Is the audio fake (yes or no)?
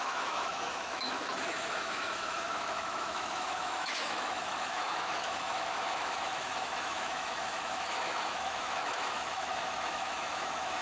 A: yes